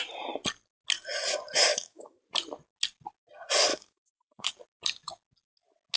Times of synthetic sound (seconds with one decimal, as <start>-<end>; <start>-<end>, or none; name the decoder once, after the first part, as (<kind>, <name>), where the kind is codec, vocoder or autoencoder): 1.7-2.2 (autoencoder, DAC-VAE); 3.7-4.5